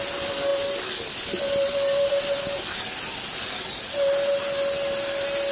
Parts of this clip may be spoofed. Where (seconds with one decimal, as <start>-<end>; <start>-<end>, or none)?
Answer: none